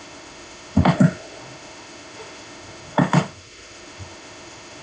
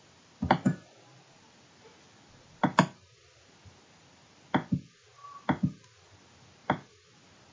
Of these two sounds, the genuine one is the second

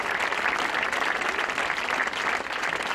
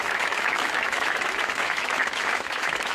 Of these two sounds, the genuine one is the first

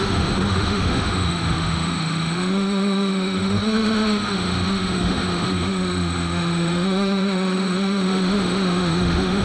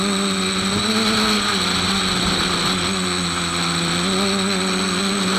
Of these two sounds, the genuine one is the second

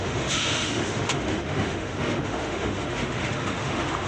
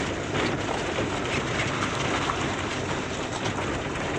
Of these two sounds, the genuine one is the second